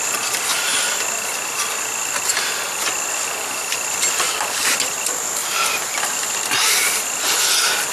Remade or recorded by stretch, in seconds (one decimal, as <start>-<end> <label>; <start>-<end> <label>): 0.0-7.9 recorded